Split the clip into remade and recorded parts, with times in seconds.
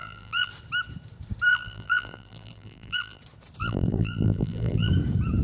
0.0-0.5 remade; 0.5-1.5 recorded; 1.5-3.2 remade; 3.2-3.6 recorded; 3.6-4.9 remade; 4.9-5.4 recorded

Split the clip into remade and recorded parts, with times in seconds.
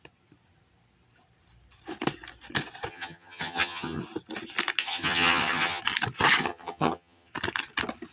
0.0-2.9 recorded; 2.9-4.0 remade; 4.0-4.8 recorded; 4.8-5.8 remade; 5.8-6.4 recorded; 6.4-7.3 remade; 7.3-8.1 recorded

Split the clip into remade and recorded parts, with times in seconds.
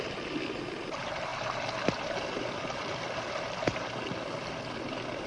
0.0-5.3 recorded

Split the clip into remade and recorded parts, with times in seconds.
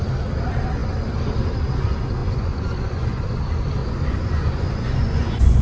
0.0-2.2 recorded; 2.2-3.4 remade; 3.4-3.8 recorded; 3.8-5.6 remade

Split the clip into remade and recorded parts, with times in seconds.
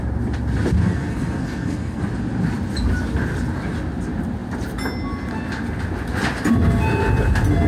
0.0-0.8 recorded; 0.8-2.0 remade; 2.0-7.7 recorded